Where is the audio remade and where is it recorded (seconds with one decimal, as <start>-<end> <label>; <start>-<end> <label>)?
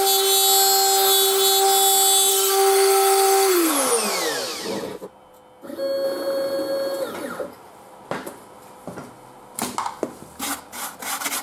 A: 0.0-2.3 recorded; 2.3-3.7 remade; 3.7-11.4 recorded